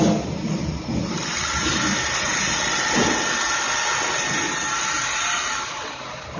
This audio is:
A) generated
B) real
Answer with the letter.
B